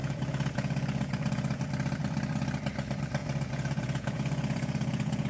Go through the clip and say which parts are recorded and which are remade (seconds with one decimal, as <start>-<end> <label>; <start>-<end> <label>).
0.0-1.6 remade; 1.6-3.2 recorded; 3.2-5.3 remade